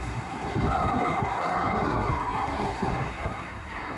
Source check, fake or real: fake